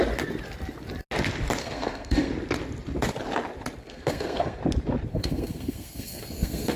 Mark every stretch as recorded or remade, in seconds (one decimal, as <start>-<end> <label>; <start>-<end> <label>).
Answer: 0.0-1.6 recorded; 1.6-2.3 remade; 2.3-3.8 recorded; 3.8-4.6 remade; 4.6-5.1 recorded; 5.1-6.8 remade